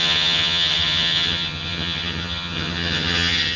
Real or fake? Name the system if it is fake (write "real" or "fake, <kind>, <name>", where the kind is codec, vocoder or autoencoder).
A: fake, vocoder, HiFi-GAN